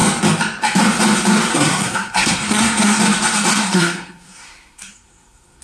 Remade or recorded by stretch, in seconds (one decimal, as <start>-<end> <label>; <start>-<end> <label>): 0.0-1.5 recorded; 1.5-3.0 remade; 3.0-3.5 recorded; 3.5-5.6 remade

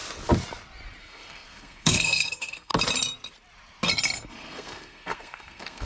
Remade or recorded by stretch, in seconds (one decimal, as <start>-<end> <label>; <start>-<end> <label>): 0.0-1.0 recorded; 1.0-2.7 remade; 2.7-4.3 recorded; 4.3-5.9 remade

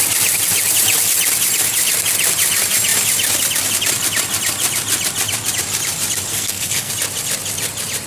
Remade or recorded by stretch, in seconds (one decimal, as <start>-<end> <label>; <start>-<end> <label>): 0.0-6.3 recorded; 6.3-6.9 remade; 6.9-8.1 recorded

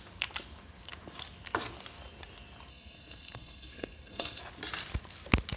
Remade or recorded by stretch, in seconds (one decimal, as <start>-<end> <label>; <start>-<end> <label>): 0.0-2.7 recorded; 2.7-4.4 remade; 4.4-5.6 recorded

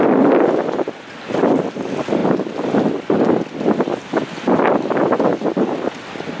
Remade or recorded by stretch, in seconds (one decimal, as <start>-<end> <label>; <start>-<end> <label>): 0.0-6.4 recorded

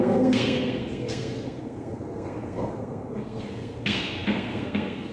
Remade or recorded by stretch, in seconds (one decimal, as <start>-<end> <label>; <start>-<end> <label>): 0.0-5.1 remade